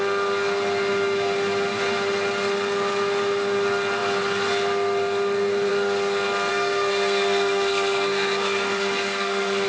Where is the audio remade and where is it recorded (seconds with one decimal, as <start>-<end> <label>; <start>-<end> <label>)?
0.0-6.5 recorded; 6.5-9.7 remade